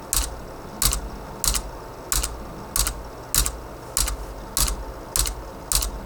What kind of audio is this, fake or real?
real